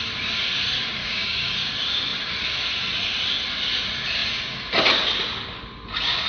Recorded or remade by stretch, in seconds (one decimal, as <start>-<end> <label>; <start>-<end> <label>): 0.0-1.0 recorded; 1.0-1.7 remade; 1.7-6.3 recorded